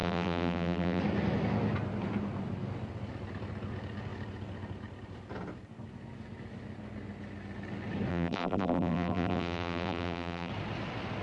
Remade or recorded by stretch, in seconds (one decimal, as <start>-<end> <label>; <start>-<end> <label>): 0.0-1.0 remade; 1.0-8.1 recorded; 8.1-10.5 remade; 10.5-11.2 recorded